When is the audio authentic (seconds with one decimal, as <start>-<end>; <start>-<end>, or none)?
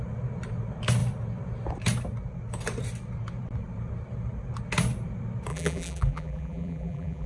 0.0-5.5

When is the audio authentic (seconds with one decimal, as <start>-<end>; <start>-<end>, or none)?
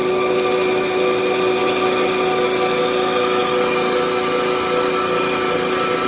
0.0-6.1